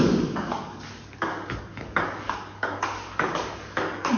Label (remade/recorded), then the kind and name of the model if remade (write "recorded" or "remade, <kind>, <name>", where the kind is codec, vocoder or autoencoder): remade, codec, DAC